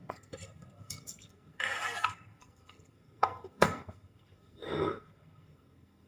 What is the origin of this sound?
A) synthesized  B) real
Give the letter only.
A